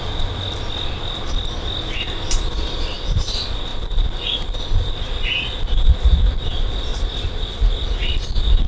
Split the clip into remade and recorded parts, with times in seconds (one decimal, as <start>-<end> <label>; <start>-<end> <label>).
0.0-3.7 recorded; 3.7-5.7 remade; 5.7-6.9 recorded; 6.9-7.7 remade; 7.7-8.7 recorded